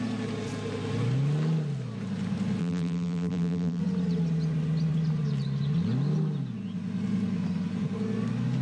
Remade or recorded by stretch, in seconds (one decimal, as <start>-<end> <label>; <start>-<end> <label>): 0.0-2.6 recorded; 2.6-3.8 remade; 3.8-8.6 recorded